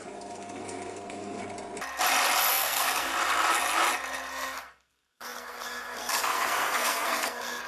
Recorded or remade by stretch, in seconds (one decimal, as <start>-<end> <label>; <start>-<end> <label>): 0.0-1.4 remade; 1.4-2.5 recorded; 2.5-3.1 remade; 3.1-4.3 recorded; 4.3-7.7 remade